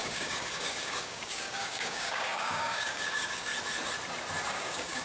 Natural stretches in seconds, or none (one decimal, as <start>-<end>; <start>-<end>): 3.5-4.5